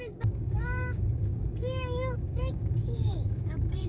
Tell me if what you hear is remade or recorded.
remade